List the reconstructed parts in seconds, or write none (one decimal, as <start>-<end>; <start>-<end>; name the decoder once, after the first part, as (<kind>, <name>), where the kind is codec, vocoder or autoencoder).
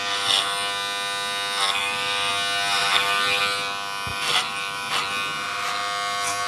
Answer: 1.8-2.3 (vocoder, BigVGAN v2); 2.8-3.4; 4.1-4.9